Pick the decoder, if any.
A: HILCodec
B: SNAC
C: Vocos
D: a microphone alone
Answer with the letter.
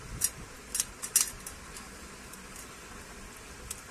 D